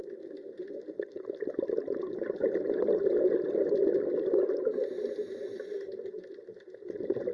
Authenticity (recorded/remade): recorded